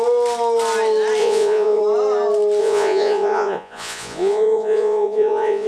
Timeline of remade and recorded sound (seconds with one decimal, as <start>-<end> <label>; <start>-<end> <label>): 0.0-1.2 recorded; 1.2-1.8 remade; 1.8-2.6 recorded; 2.6-5.7 remade